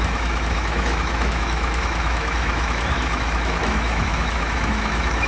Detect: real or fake fake